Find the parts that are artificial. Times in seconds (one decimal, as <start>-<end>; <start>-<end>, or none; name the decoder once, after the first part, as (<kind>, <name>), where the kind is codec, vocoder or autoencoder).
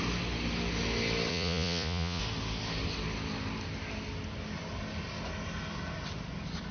1.3-2.2 (vocoder, Vocos)